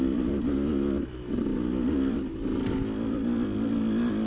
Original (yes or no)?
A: yes